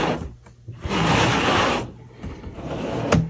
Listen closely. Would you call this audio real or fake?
real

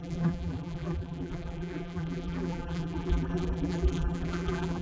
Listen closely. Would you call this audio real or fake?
fake